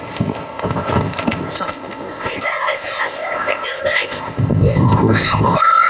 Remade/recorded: remade